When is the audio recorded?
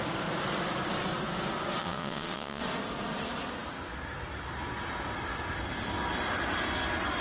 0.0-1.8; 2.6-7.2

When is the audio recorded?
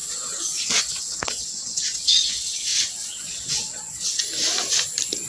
4.2-5.3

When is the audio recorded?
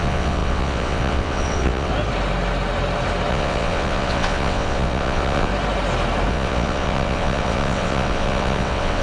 1.9-3.3; 5.5-6.3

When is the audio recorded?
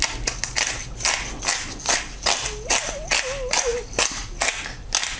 0.0-5.2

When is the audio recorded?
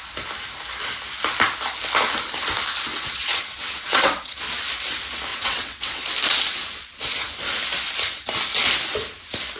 0.0-2.9; 4.4-5.3; 6.0-9.6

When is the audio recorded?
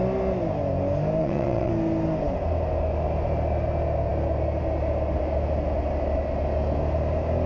0.0-1.2; 1.7-7.5